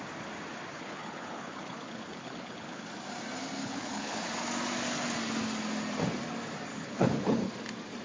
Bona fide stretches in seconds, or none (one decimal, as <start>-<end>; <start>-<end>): 0.0-0.7; 2.8-3.6; 4.4-6.7; 7.5-8.0